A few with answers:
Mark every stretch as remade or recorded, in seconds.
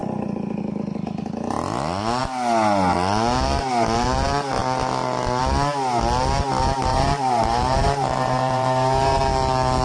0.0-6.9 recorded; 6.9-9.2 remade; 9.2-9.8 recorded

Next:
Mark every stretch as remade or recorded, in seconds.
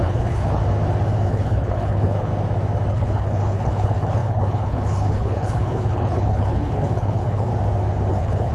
0.0-0.6 remade; 0.6-1.3 recorded; 1.3-2.3 remade; 2.3-2.9 recorded; 2.9-7.5 remade; 7.5-8.1 recorded; 8.1-8.5 remade